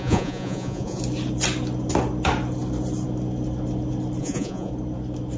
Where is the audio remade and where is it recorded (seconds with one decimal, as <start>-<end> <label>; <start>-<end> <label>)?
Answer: 0.0-1.0 remade; 1.0-4.2 recorded; 4.2-4.7 remade; 4.7-5.4 recorded